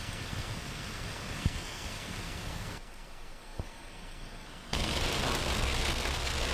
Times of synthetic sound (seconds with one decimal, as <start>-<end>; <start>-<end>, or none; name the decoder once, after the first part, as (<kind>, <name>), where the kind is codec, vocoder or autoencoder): 0.0-6.5 (codec, SNAC)

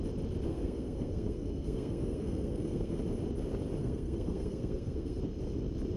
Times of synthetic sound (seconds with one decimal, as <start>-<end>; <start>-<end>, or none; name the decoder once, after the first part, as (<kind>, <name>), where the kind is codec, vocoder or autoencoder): 0.5-3.0 (codec, SNAC); 3.8-5.2

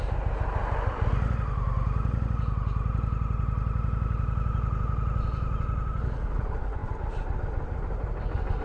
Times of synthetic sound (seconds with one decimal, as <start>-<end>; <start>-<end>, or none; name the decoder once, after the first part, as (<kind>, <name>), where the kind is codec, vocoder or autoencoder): none

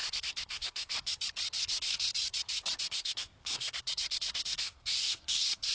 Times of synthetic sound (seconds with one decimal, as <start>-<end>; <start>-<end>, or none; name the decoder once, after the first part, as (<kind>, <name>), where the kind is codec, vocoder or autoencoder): 0.0-1.1 (codec, SNAC); 1.6-2.1; 2.8-5.7

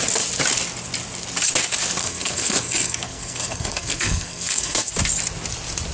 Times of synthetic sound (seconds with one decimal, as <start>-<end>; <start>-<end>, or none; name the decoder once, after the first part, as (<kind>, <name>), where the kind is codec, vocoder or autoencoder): 2.0-4.9 (codec, SNAC)

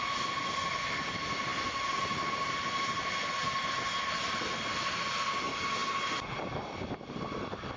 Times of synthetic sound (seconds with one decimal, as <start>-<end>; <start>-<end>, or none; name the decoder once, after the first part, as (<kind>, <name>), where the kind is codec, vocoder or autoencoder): none

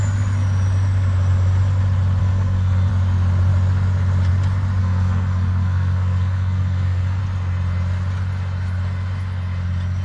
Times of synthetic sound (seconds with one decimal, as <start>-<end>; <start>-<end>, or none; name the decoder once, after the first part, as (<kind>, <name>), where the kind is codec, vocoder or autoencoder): 2.2-2.9 (codec, SNAC); 4.8-7.2

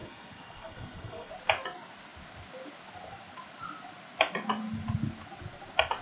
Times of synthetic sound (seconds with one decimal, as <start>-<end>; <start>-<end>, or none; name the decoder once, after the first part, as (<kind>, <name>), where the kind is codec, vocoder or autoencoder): 0.0-1.3 (codec, SNAC)